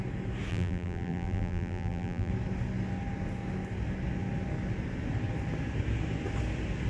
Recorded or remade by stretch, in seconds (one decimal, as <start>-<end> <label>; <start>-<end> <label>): 0.0-0.5 recorded; 0.5-2.3 remade; 2.3-6.9 recorded